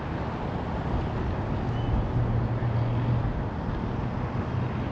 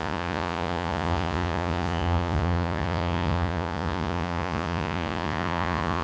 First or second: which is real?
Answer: first